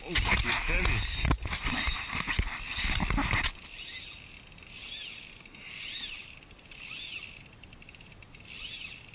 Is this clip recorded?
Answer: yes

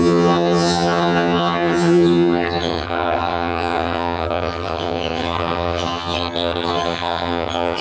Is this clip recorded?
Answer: no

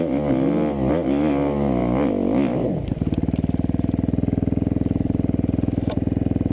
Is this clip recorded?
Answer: yes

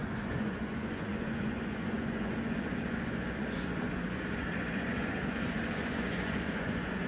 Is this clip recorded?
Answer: no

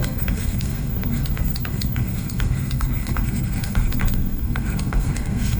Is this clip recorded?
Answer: no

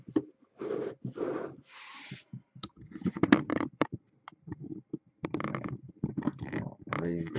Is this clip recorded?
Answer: no